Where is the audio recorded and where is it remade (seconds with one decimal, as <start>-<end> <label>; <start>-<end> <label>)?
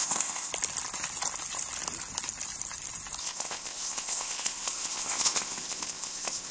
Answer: 0.0-0.5 remade; 0.5-3.2 recorded; 3.2-6.5 remade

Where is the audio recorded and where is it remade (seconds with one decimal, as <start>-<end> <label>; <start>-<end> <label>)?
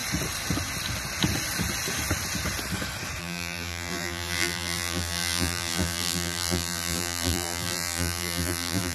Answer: 0.0-3.2 recorded; 3.2-8.9 remade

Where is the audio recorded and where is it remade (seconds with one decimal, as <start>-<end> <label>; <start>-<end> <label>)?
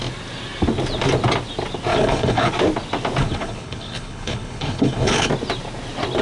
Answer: 0.0-1.9 recorded; 1.9-2.5 remade; 2.5-3.2 recorded; 3.2-5.3 remade; 5.3-6.2 recorded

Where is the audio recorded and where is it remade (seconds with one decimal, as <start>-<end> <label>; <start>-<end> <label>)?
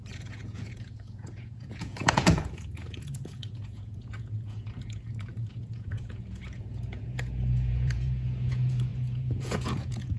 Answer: 0.0-10.2 remade